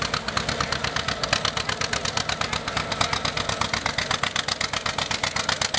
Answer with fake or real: real